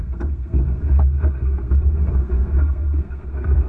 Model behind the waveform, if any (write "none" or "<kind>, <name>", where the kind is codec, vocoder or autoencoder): codec, SNAC